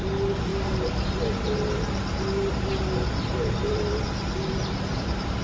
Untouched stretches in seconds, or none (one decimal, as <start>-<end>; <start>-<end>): 0.0-5.4